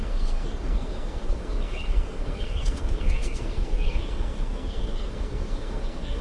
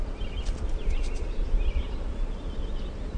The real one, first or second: second